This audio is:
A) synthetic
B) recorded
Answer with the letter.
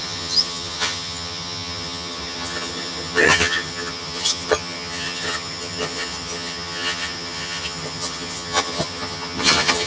A